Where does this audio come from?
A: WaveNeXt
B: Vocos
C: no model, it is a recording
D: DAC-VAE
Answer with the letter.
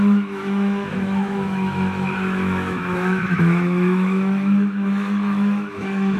D